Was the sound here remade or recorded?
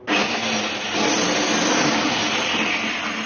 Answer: recorded